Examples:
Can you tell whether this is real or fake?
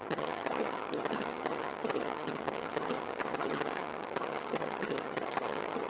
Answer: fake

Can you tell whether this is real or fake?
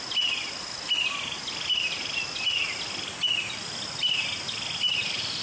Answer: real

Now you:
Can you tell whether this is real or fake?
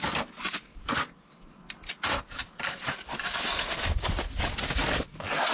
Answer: real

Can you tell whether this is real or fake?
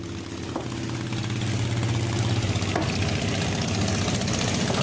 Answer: real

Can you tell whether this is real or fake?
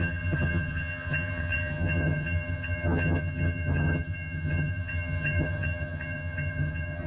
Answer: fake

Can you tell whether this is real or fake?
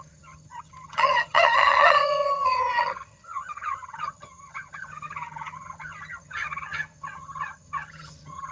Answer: fake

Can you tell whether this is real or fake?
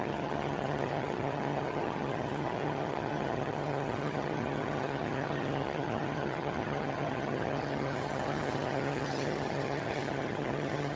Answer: fake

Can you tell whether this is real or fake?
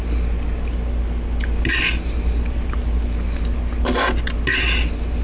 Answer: real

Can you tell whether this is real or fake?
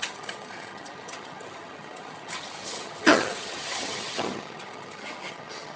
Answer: fake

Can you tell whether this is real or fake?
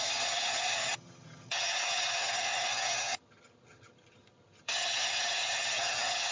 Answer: fake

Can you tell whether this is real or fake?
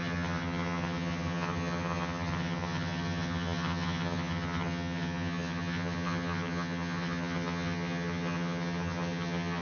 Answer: fake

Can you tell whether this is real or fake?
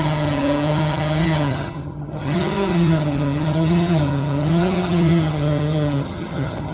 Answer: fake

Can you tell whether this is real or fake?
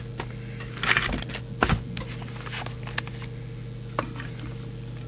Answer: real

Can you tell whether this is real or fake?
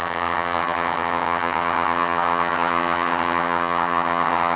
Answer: fake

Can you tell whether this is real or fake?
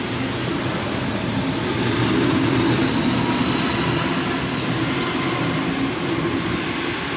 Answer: real